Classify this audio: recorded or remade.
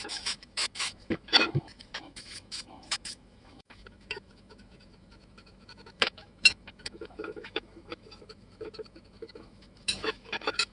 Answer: remade